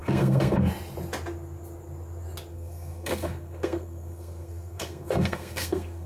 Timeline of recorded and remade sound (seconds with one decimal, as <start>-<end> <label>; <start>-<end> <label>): 0.0-0.7 remade; 0.7-2.5 recorded; 2.5-6.1 remade